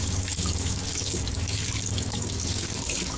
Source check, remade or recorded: remade